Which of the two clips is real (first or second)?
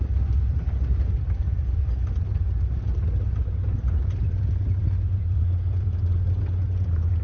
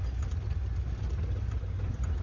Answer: second